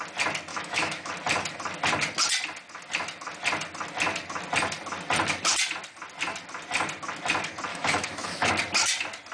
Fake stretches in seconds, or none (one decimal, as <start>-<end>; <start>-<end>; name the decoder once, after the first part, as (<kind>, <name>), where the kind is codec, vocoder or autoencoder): 0.5-1.1 (autoencoder, DAC-VAE); 7.7-8.5